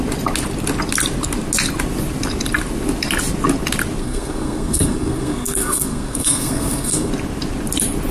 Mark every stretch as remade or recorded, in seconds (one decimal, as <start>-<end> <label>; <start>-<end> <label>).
0.0-4.0 recorded; 4.0-7.1 remade; 7.1-8.1 recorded